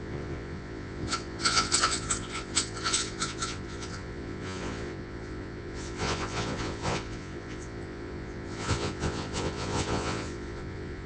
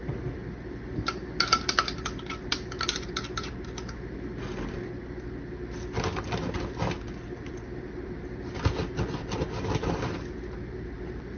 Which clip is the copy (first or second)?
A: first